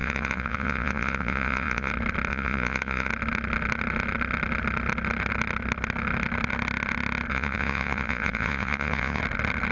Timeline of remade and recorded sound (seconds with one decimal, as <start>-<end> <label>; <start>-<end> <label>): 0.0-1.9 remade; 1.9-2.3 recorded; 2.3-3.1 remade; 3.1-7.3 recorded; 7.3-9.2 remade; 9.2-9.7 recorded